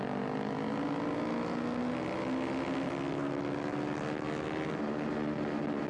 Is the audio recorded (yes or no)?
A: yes